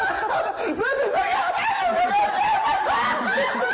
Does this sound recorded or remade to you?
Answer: recorded